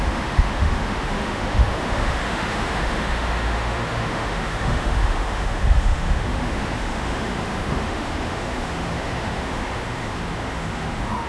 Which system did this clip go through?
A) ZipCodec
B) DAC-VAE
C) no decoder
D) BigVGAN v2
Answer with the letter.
B